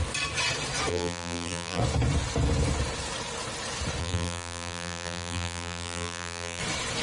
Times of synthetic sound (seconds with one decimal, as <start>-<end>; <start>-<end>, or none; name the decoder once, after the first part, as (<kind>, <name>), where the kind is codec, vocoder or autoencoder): 0.9-1.8 (vocoder, BigVGAN v2); 4.0-6.6